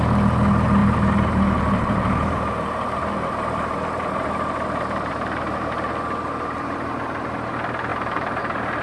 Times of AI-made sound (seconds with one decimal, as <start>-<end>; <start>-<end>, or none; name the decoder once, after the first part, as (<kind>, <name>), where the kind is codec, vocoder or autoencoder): 0.8-5.9 (vocoder, BigVGAN v2); 7.9-8.4